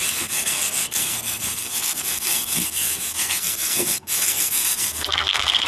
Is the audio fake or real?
fake